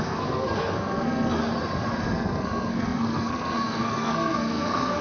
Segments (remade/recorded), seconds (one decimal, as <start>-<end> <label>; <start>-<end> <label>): 0.0-1.4 remade; 1.4-2.0 recorded; 2.0-5.0 remade